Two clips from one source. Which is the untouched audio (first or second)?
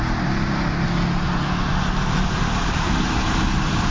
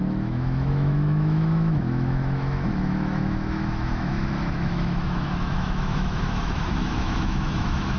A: first